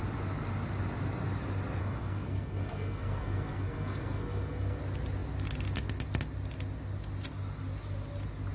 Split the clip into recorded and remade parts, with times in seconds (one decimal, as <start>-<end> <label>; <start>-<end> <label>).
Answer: 0.0-1.8 recorded; 1.8-4.8 remade; 4.8-8.5 recorded

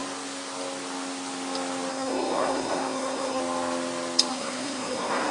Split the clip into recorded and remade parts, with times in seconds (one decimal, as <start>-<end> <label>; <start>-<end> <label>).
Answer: 0.0-1.9 recorded; 1.9-3.4 remade; 3.4-4.3 recorded; 4.3-5.3 remade

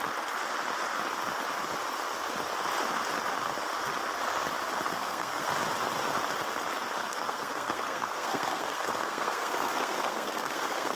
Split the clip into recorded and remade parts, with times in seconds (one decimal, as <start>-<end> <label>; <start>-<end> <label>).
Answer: 0.0-4.9 recorded; 4.9-5.5 remade; 5.5-7.0 recorded; 7.0-11.0 remade

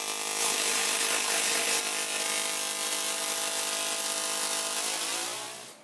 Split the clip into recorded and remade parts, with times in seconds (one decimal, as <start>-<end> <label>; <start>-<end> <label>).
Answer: 0.0-0.4 recorded; 0.4-1.8 remade; 1.8-5.8 recorded

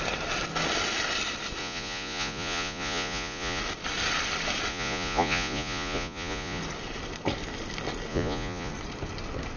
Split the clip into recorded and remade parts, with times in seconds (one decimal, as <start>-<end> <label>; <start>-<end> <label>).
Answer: 0.0-1.6 recorded; 1.6-3.6 remade; 3.6-4.7 recorded; 4.7-6.6 remade; 6.6-8.1 recorded; 8.1-8.7 remade; 8.7-9.6 recorded

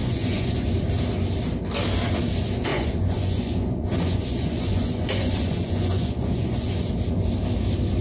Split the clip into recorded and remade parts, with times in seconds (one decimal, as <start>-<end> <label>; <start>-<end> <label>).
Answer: 0.0-0.7 remade; 0.7-2.7 recorded; 2.7-6.9 remade; 6.9-8.0 recorded

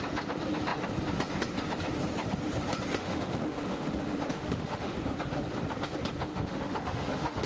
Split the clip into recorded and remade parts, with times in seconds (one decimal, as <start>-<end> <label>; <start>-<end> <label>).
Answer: 0.0-3.0 recorded; 3.0-4.9 remade; 4.9-6.3 recorded; 6.3-7.5 remade